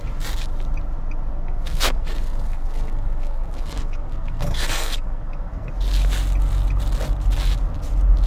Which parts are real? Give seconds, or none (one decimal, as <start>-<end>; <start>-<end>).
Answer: 0.0-1.3; 5.7-8.3